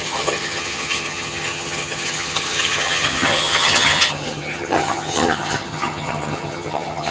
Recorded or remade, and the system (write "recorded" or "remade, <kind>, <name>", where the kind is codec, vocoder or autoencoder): remade, vocoder, HiFi-GAN